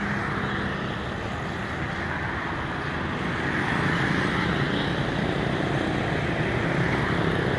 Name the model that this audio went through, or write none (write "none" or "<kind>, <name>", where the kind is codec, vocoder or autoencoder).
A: none